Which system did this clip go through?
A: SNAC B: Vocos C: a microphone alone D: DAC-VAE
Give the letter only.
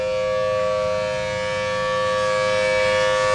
C